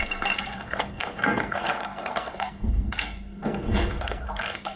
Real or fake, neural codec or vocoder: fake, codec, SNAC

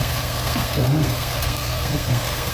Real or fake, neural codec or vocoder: fake, codec, SNAC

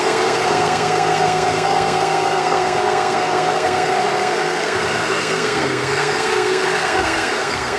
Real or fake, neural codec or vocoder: fake, codec, SNAC